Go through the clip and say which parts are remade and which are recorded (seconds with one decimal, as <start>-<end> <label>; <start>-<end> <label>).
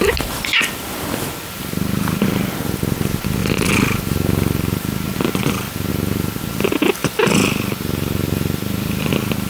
0.0-7.0 recorded; 7.0-9.1 remade; 9.1-9.5 recorded